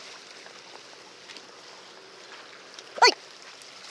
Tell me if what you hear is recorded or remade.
recorded